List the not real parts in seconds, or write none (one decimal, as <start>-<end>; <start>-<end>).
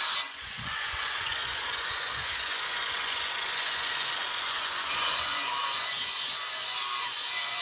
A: 0.0-7.6